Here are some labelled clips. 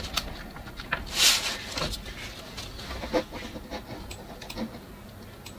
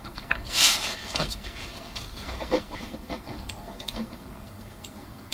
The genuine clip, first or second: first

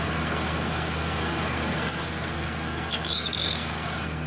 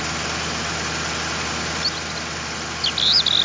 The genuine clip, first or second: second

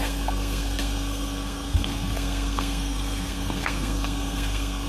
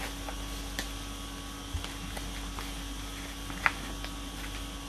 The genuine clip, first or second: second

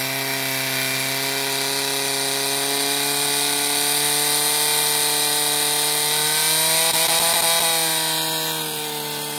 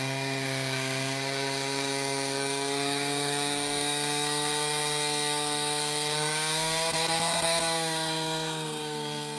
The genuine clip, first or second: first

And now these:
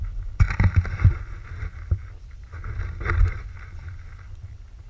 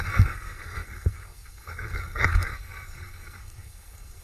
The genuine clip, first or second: first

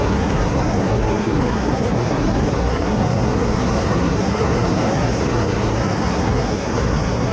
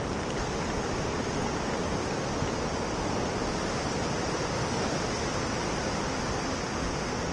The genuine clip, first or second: second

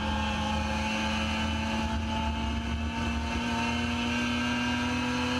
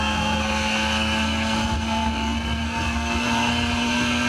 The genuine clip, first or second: first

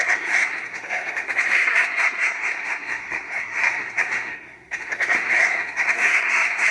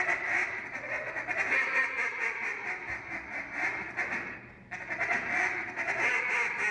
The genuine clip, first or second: second